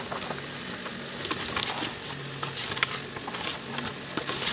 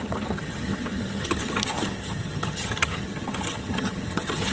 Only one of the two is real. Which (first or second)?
first